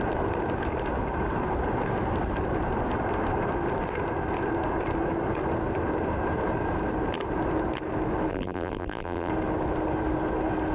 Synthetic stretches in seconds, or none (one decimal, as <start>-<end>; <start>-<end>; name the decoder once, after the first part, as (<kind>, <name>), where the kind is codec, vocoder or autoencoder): 8.3-9.3 (vocoder, BigVGAN v2)